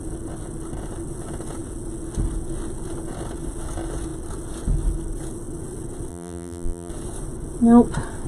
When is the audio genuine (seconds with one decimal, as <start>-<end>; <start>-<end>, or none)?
0.0-6.1; 6.9-8.3